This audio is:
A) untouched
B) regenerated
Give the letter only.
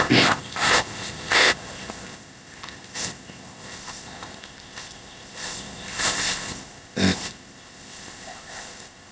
B